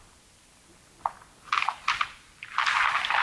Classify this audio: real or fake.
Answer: real